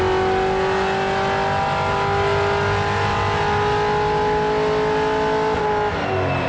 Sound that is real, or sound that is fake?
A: real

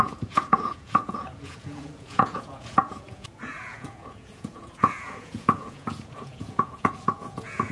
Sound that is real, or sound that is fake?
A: fake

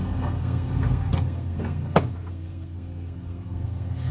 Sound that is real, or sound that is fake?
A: fake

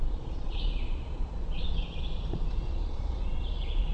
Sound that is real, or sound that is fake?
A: fake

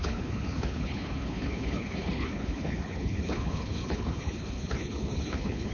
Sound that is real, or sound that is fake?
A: fake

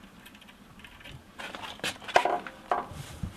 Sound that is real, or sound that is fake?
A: real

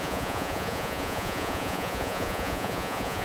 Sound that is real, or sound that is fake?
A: fake